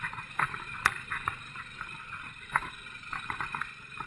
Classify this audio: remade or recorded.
recorded